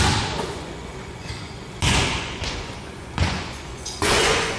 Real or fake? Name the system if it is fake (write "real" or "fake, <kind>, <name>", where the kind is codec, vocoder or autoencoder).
fake, vocoder, Vocos